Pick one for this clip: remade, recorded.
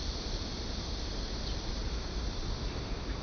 recorded